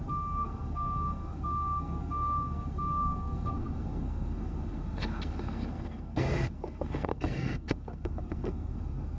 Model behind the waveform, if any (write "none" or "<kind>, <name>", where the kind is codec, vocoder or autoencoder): codec, SNAC